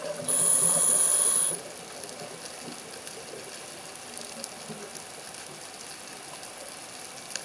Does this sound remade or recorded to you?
recorded